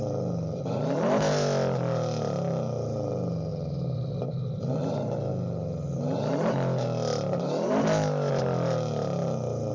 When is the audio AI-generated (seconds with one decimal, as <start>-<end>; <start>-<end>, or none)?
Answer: 3.5-5.3